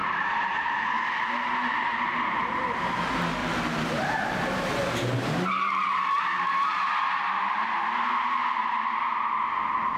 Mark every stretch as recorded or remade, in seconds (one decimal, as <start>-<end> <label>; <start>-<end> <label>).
0.0-0.9 remade; 0.9-1.9 recorded; 1.9-3.0 remade; 3.0-3.4 recorded; 3.4-6.9 remade; 6.9-10.0 recorded